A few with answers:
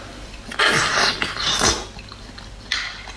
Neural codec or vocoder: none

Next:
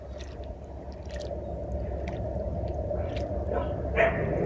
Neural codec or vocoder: none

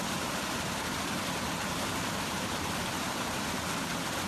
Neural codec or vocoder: vocoder, BigVGAN v2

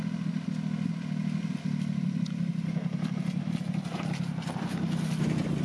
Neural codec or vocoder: none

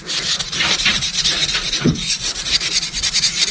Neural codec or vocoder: vocoder, BigVGAN v2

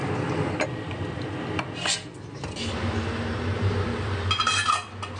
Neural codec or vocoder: none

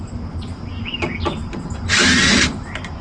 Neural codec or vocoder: none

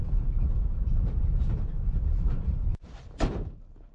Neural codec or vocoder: vocoder, BigVGAN v2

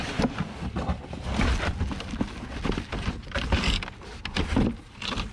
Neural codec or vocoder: none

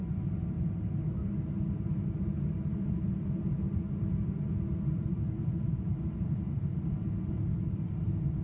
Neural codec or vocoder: none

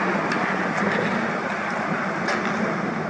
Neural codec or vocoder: none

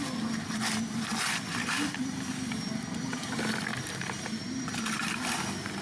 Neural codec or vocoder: none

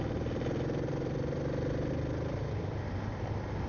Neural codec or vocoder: vocoder, BigVGAN v2